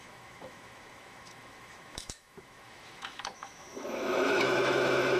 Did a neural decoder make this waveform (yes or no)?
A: yes